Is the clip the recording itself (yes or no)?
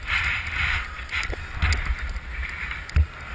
yes